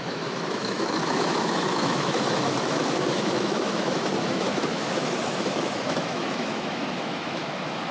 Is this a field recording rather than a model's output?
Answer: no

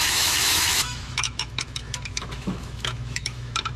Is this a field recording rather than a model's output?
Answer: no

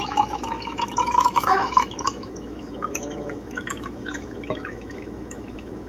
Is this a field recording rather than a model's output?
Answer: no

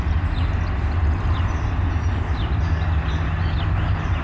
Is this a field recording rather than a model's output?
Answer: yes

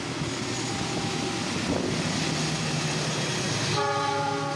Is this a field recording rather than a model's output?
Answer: yes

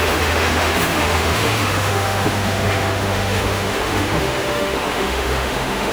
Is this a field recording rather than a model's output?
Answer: no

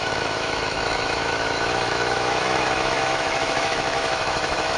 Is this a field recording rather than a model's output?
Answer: no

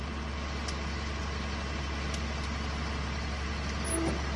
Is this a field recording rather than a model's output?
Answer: yes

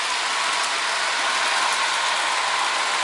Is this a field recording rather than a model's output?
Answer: yes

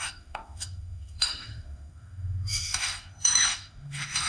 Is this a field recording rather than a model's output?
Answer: no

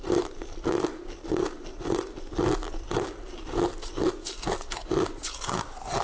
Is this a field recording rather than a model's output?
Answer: yes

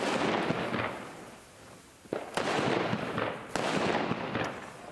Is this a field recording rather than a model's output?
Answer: yes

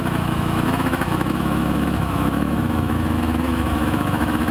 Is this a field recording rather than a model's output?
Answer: no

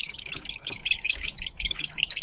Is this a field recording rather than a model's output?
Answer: no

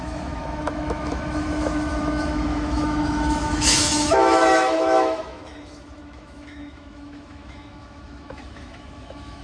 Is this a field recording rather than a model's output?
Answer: no